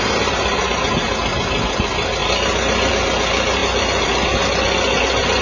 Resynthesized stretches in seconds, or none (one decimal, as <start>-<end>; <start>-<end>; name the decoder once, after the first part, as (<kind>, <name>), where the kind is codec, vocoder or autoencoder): none